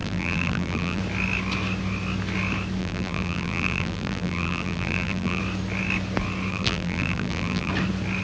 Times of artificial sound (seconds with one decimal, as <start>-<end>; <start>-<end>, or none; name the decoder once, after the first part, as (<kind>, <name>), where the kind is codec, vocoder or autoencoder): 0.0-1.0 (vocoder, BigVGAN v2); 2.8-5.4; 6.5-7.7